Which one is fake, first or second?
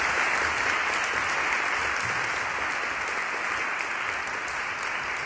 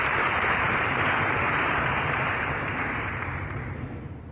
second